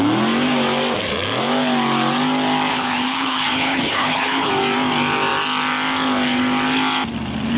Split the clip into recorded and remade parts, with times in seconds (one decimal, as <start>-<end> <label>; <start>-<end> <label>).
0.0-2.7 recorded; 2.7-4.5 remade; 4.5-7.6 recorded